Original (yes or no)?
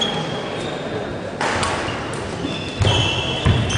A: yes